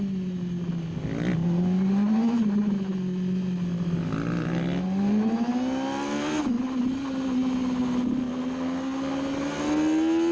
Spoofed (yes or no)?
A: no